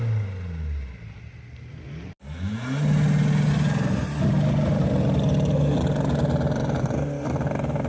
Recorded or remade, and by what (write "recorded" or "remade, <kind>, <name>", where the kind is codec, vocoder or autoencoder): recorded